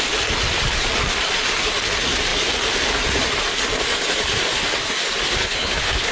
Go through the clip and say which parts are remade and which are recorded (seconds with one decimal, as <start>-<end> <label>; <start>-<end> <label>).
0.0-5.4 recorded; 5.4-6.1 remade